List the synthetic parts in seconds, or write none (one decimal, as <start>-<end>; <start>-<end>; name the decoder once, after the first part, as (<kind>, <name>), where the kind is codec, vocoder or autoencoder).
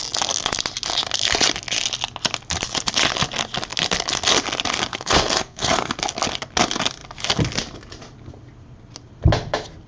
4.9-5.9 (codec, SNAC)